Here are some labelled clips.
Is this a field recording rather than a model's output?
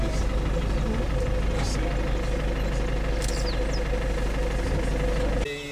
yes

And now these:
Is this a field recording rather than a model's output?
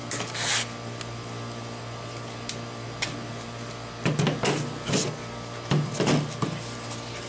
yes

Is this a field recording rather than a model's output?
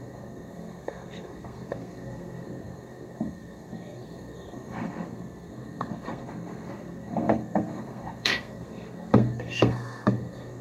no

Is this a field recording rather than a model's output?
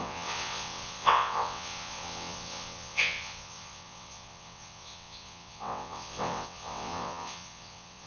no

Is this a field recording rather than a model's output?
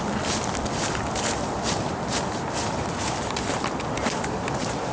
no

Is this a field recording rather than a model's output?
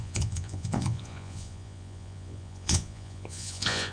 no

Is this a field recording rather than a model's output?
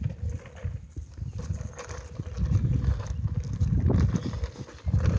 yes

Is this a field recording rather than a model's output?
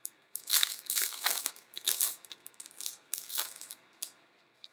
no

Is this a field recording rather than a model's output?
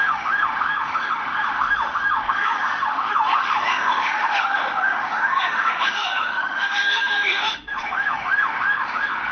no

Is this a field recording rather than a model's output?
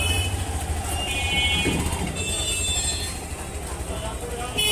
yes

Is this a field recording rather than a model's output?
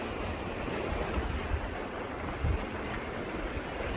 no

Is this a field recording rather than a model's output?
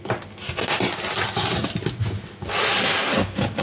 yes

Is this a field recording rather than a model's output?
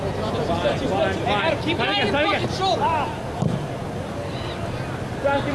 yes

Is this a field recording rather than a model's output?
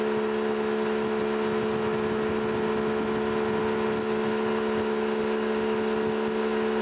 yes